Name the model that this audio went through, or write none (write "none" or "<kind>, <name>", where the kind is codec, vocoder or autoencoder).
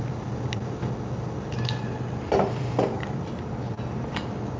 none